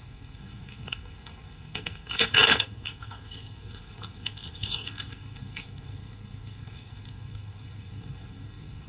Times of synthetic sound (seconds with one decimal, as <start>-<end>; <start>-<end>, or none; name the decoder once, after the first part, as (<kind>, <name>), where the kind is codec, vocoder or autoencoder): 0.0-8.9 (codec, SNAC)